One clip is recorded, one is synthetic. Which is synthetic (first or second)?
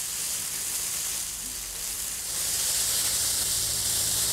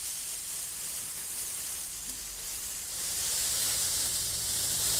second